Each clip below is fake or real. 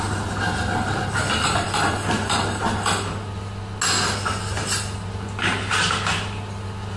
real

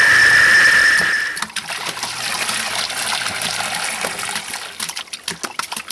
real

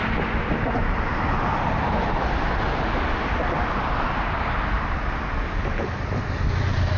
real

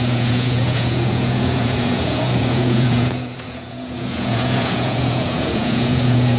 fake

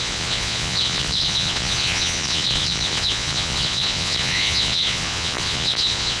fake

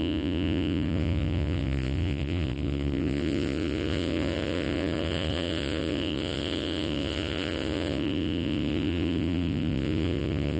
fake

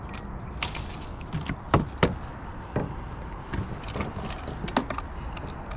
real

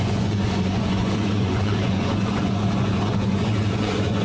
fake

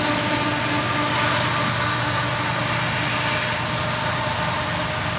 real